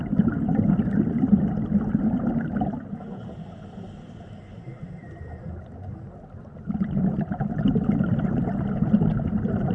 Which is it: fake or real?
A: real